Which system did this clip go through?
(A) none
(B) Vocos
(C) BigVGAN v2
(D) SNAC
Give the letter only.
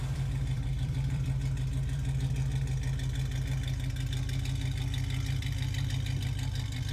C